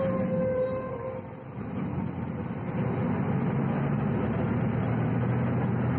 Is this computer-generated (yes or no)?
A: no